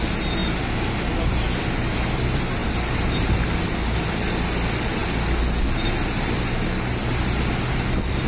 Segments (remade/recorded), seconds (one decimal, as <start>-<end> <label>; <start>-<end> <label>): 0.0-2.6 recorded; 2.6-3.7 remade; 3.7-8.3 recorded